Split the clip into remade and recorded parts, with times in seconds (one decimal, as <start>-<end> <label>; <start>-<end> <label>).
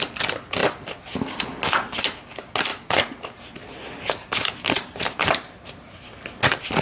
0.0-2.7 recorded; 2.7-5.7 remade; 5.7-6.8 recorded